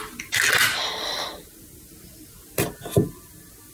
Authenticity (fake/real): real